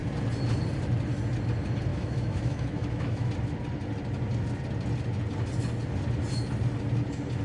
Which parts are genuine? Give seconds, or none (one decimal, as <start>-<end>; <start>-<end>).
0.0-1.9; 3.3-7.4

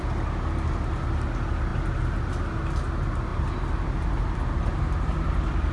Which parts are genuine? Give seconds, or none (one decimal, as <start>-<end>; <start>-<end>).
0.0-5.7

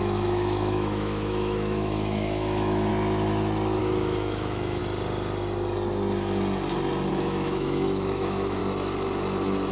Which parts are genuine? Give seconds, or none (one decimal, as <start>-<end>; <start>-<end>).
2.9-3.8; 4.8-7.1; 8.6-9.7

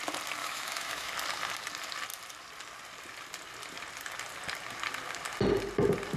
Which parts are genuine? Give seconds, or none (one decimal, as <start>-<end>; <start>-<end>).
0.0-0.4; 1.1-6.2

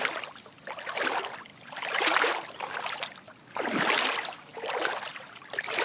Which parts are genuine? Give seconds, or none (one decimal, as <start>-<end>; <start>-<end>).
0.0-5.8